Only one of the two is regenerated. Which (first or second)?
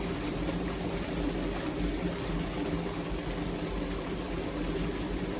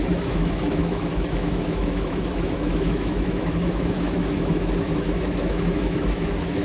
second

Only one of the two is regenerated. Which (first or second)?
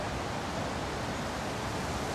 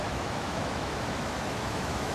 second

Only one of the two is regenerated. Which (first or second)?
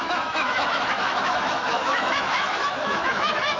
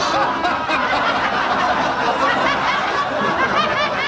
first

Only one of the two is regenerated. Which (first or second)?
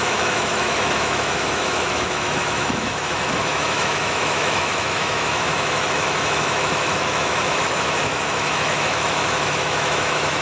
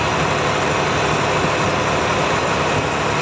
first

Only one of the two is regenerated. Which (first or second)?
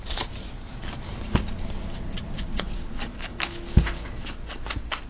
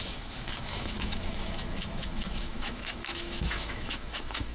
second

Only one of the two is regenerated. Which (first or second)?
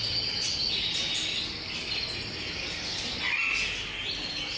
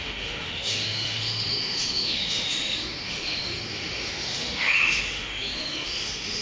second